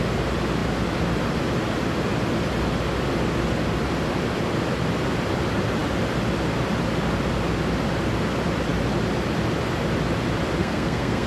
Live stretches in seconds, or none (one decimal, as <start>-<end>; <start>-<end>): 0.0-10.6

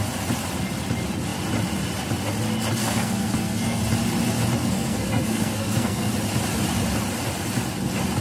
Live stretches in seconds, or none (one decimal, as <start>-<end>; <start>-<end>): 0.0-2.8; 3.8-4.6; 6.1-8.2

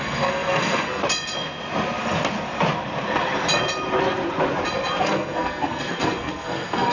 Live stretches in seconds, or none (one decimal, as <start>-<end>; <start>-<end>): 1.0-5.0

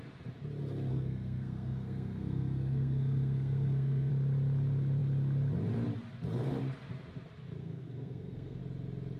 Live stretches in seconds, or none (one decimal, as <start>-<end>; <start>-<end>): 0.0-0.9; 4.1-7.6; 8.6-9.2